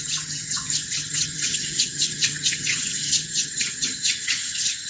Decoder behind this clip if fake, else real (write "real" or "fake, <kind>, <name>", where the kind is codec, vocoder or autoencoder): fake, vocoder, HiFi-GAN